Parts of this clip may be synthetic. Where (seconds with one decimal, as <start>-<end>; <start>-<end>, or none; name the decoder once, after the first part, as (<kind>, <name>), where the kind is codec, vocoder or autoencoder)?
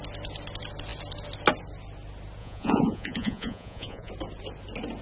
2.4-4.1 (vocoder, Vocos)